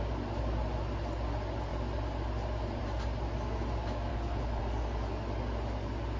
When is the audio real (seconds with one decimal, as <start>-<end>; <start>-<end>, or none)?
0.0-4.1; 4.6-6.2